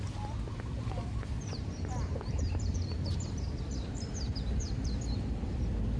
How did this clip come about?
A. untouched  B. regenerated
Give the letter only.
B